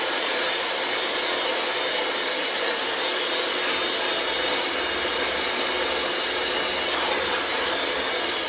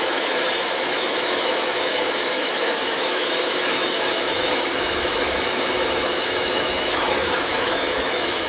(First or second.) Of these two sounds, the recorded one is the first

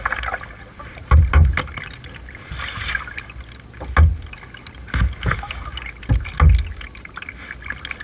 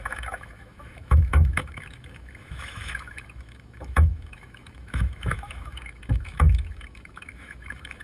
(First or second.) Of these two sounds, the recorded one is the first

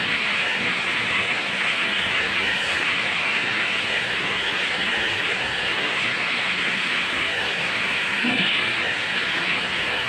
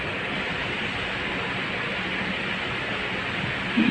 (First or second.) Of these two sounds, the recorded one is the second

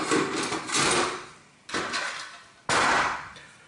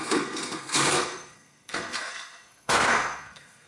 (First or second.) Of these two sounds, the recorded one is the first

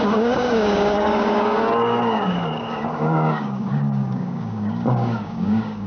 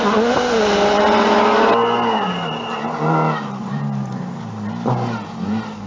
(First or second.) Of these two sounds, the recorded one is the second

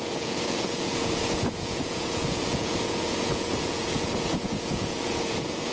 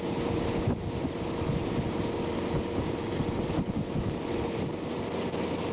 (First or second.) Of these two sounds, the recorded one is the second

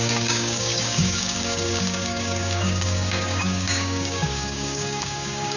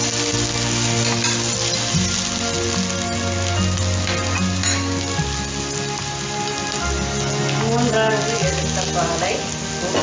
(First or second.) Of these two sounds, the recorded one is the second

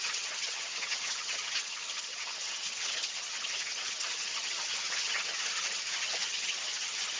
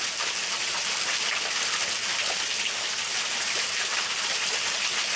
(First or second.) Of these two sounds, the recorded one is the second